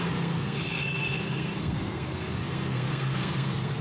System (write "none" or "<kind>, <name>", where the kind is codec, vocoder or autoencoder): codec, SNAC